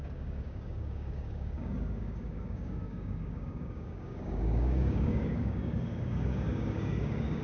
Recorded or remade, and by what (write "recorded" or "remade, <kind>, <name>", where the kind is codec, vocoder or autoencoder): remade, codec, DAC